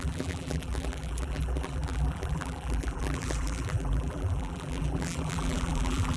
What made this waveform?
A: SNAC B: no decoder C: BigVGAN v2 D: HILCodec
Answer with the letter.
C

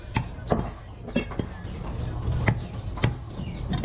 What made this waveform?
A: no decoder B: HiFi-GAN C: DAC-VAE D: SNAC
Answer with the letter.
A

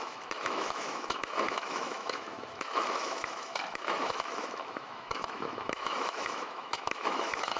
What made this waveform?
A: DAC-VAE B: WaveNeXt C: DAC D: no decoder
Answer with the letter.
A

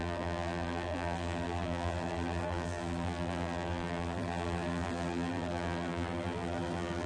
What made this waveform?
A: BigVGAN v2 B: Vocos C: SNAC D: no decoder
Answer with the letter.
A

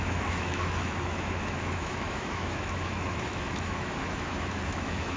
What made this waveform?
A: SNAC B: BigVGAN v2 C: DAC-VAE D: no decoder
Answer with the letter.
C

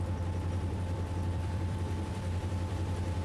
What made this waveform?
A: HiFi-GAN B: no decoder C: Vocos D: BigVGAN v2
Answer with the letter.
D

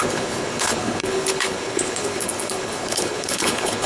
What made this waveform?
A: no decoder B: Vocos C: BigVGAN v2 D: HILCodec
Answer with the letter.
D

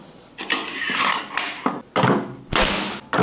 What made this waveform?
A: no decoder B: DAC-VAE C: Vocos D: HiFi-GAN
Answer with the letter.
A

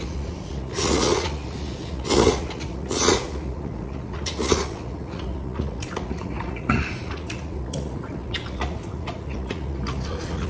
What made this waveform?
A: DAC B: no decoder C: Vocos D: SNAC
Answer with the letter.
C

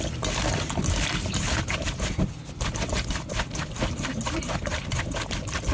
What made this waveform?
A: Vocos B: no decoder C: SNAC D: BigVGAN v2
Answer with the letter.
B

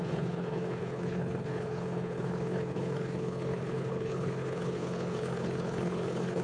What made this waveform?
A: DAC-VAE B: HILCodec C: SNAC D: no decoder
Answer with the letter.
B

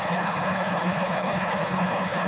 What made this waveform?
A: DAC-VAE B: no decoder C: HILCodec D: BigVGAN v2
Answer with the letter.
C